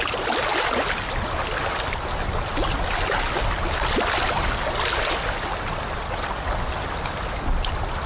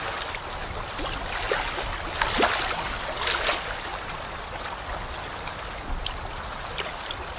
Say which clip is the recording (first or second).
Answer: first